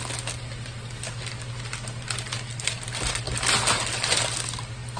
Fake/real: real